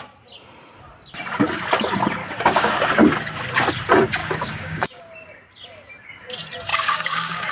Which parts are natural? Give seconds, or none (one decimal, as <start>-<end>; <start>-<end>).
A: 0.0-2.2; 2.9-4.2; 5.0-6.7